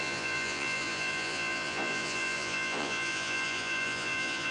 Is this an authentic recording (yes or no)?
no